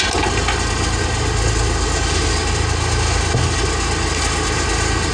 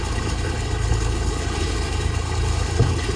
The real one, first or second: first